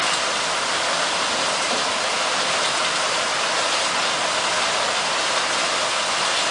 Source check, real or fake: real